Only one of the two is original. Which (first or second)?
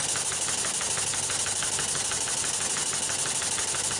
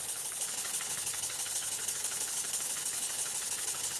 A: first